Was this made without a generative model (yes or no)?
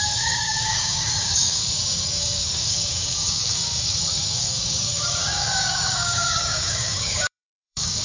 no